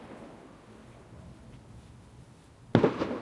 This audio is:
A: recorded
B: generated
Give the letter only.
A